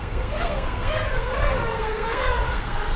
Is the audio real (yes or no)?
no